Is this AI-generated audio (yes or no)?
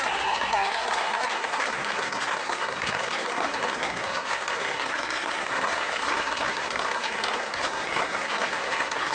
yes